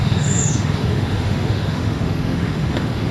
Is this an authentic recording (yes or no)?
no